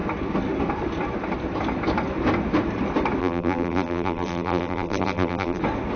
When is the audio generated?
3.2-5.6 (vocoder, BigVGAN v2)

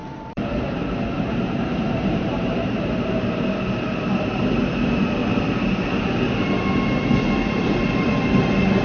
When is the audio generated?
0.0-5.2 (vocoder, BigVGAN v2); 7.5-8.8

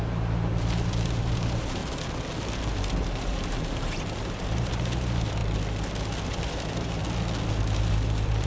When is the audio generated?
0.0-1.8 (vocoder, BigVGAN v2); 2.7-5.4; 6.4-7.0; 7.9-8.5

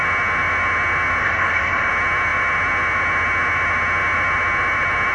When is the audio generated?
1.2-1.9 (codec, SNAC)

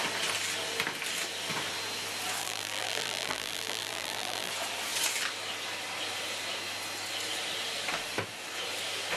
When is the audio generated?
2.4-4.5 (vocoder, BigVGAN v2)

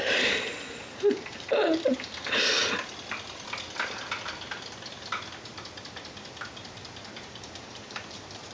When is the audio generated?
0.0-2.6 (vocoder, BigVGAN v2); 7.2-8.5

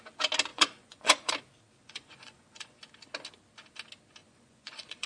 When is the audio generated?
0.5-1.3 (vocoder, Vocos); 1.8-2.8; 4.2-5.1

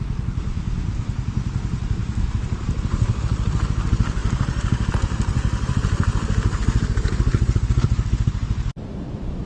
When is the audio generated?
2.0-3.1 (vocoder, BigVGAN v2)